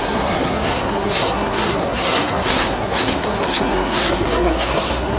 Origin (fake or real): fake